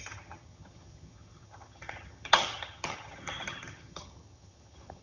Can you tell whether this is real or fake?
fake